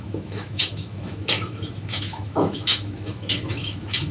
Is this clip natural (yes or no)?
no